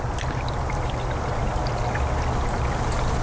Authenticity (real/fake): real